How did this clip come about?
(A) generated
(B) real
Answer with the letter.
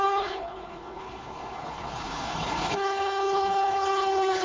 A